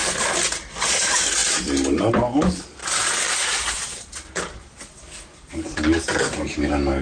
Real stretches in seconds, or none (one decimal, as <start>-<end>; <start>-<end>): 0.0-0.7; 2.8-4.5